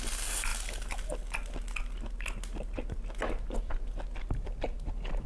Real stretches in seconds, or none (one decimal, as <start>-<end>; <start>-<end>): 0.0-5.3

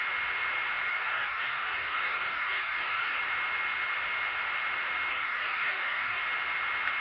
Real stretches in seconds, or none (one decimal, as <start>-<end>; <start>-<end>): 0.0-0.9; 3.2-5.1; 6.2-7.0

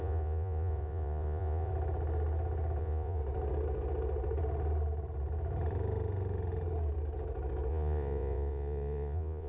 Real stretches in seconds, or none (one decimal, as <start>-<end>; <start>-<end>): 1.7-2.8; 3.2-7.7